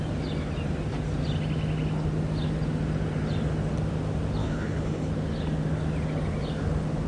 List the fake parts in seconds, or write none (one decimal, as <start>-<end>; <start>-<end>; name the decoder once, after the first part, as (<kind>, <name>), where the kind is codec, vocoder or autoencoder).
4.4-5.1 (codec, HILCodec)

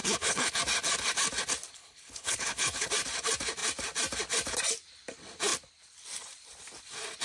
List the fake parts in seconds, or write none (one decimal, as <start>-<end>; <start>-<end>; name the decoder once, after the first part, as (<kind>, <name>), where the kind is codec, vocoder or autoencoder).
0.0-0.6 (codec, HILCodec); 1.8-2.9

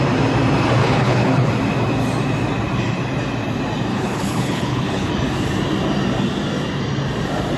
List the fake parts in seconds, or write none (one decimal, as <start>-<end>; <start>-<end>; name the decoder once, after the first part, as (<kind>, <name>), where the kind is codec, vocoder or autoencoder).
0.8-1.5 (codec, HILCodec); 3.9-5.1

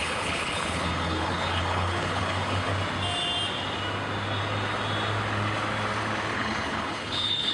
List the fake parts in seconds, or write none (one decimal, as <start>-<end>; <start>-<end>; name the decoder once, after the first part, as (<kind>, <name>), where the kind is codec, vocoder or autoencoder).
0.0-2.7 (codec, HILCodec); 6.3-7.5

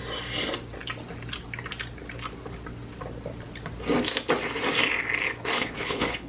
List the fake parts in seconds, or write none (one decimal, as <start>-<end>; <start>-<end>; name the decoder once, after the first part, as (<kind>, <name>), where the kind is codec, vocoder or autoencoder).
5.5-6.3 (codec, HILCodec)